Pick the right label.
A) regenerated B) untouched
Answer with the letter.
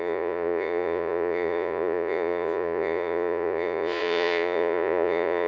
A